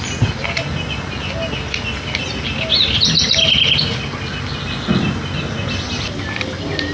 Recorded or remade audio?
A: recorded